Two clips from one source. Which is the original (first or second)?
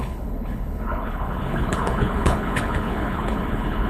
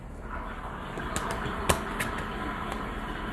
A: second